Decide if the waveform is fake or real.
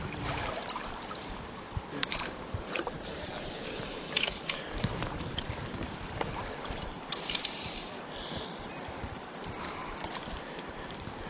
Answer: fake